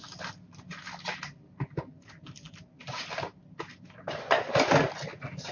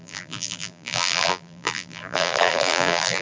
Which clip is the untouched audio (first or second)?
first